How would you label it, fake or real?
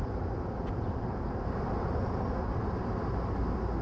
real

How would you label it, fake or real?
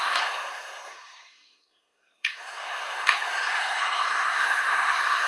fake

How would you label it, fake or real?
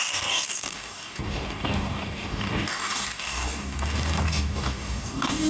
fake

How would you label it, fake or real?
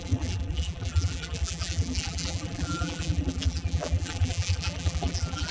fake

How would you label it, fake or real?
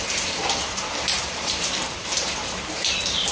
fake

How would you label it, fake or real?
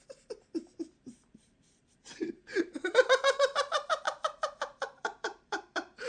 fake